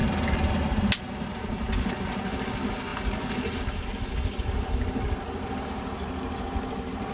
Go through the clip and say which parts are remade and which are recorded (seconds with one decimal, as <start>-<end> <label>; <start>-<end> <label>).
0.0-7.1 recorded